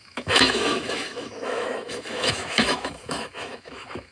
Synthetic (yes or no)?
yes